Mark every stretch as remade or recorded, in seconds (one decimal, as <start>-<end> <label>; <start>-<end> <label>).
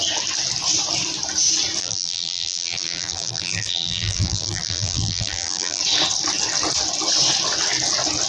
0.0-1.8 recorded; 1.8-5.8 remade; 5.8-8.3 recorded